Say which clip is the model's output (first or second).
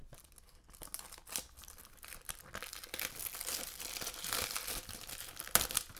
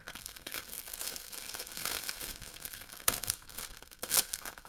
second